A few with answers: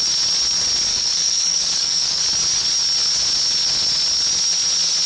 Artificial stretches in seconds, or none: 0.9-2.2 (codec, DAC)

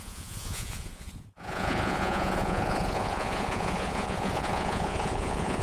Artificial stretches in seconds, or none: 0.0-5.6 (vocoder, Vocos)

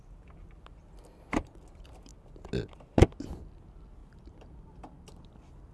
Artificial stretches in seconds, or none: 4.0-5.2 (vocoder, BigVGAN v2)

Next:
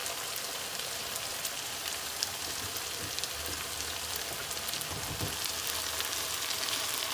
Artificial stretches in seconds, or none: 0.0-4.2 (vocoder, BigVGAN v2)

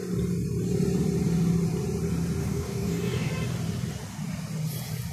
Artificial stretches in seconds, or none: 2.4-3.3 (codec, DAC)

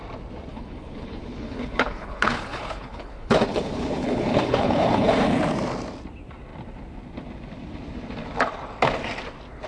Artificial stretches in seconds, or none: 0.5-5.1 (codec, HILCodec)

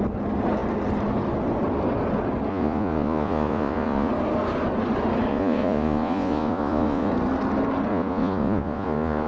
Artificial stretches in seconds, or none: 2.5-4.1 (vocoder, Vocos); 5.3-7.1; 7.9-9.3